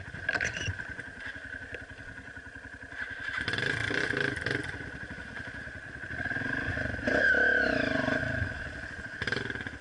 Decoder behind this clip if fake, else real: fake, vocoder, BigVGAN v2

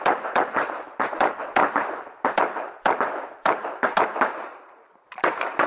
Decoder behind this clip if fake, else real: fake, vocoder, BigVGAN v2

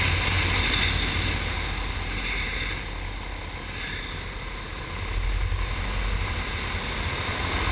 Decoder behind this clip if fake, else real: real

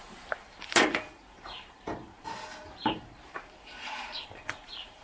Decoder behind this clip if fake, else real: fake, vocoder, BigVGAN v2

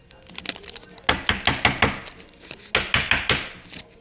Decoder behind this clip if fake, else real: real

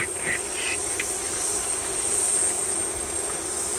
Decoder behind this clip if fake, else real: real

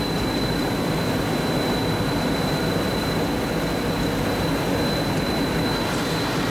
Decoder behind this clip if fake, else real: real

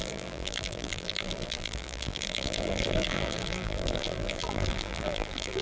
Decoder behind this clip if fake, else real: fake, vocoder, BigVGAN v2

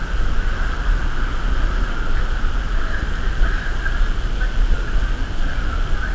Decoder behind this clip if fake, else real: real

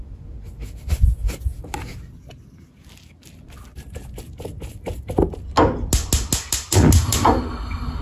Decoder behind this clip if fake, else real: real